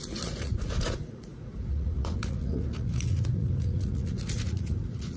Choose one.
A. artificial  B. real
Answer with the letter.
A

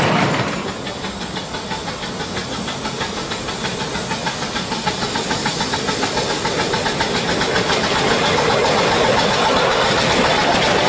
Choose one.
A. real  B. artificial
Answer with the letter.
A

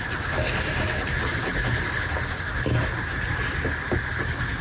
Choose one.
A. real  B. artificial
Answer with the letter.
A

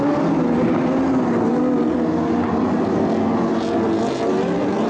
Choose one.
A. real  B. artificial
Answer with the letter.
A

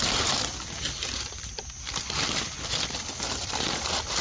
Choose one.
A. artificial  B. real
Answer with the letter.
B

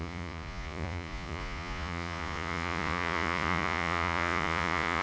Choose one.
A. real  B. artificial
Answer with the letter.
B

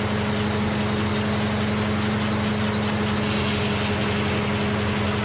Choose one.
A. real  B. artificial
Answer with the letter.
A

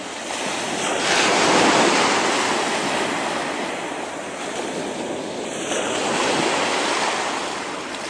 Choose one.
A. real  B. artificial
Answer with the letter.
A